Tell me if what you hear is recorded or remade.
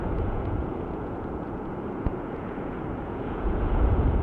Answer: remade